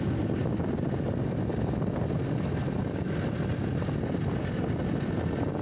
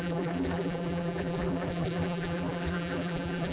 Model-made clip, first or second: second